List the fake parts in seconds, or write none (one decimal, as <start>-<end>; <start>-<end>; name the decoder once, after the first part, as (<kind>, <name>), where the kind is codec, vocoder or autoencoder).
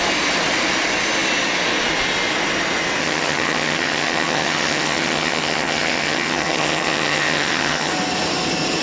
3.0-7.9 (vocoder, HiFi-GAN)